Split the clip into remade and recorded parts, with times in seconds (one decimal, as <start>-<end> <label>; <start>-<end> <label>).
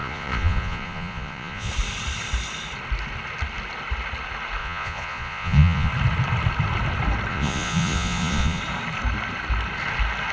0.0-1.7 remade; 1.7-4.6 recorded; 4.6-5.9 remade; 5.9-7.3 recorded; 7.3-8.6 remade; 8.6-10.3 recorded